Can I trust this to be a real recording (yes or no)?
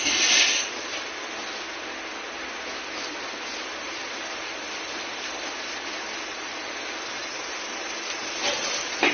yes